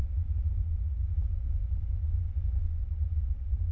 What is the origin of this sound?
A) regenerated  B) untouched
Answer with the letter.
B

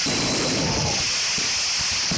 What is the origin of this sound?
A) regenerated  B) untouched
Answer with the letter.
B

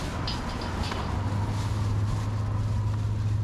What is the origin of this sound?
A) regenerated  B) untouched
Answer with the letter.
B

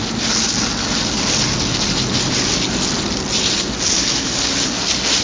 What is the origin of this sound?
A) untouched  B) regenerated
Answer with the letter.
A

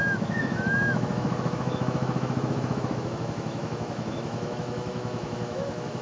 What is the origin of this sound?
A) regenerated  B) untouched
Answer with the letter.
A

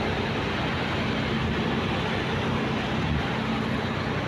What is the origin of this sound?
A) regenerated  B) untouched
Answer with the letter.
B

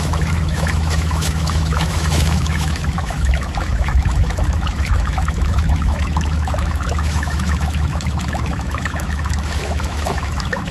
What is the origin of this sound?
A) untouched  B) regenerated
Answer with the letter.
B